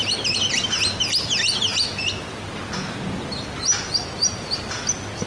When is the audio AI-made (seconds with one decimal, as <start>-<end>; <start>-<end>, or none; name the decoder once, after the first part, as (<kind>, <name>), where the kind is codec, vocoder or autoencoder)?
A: none